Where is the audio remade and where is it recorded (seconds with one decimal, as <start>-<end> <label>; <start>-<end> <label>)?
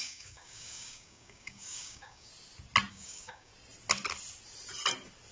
0.0-2.3 remade; 2.3-2.9 recorded; 2.9-3.5 remade; 3.5-5.3 recorded